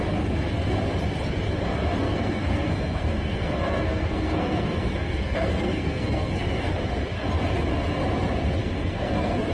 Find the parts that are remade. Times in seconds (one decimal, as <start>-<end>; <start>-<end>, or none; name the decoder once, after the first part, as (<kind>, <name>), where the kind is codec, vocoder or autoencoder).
2.0-6.7 (codec, SNAC); 8.6-9.5